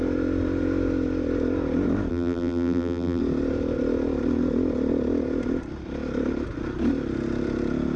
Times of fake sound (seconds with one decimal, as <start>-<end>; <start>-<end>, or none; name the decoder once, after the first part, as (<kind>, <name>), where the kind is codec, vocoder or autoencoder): 2.1-3.2 (vocoder, BigVGAN v2)